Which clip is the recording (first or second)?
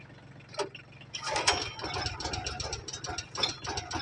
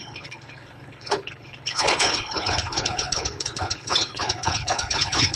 first